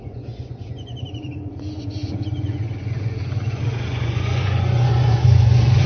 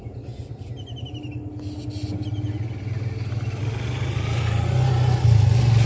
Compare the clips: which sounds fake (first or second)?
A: first